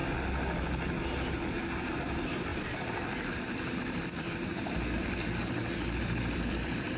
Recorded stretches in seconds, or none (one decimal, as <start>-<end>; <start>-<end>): 0.0-1.8